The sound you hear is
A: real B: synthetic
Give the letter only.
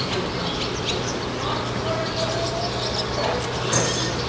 A